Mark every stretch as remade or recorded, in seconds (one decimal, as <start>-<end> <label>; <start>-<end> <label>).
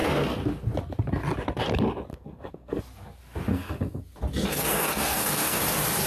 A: 0.0-2.1 recorded; 2.1-2.8 remade; 2.8-3.5 recorded; 3.5-4.0 remade; 4.0-4.5 recorded; 4.5-5.6 remade; 5.6-6.1 recorded